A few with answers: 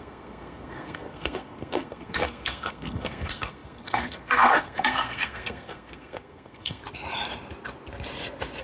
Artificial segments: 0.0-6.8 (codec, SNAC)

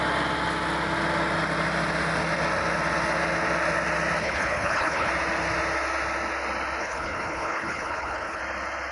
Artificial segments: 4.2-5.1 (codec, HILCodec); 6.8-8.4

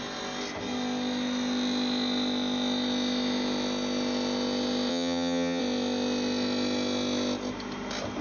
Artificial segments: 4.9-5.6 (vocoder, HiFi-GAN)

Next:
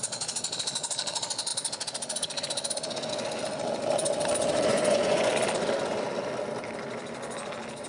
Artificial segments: 4.7-5.3 (vocoder, Vocos)

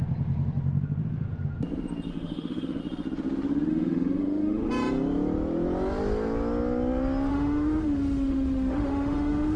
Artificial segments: 2.1-2.8 (autoencoder, DAC-VAE); 3.7-4.7; 7.3-9.6

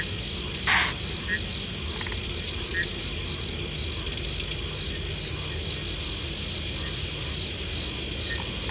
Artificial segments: none